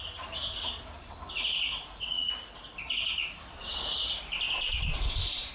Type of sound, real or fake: real